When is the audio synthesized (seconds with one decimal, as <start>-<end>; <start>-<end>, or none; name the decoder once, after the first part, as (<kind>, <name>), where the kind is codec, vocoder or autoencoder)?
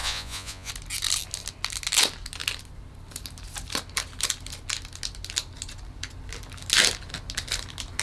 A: 0.0-0.7 (vocoder, Vocos)